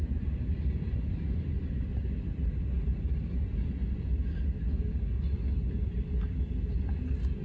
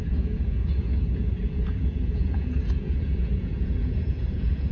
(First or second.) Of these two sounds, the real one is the first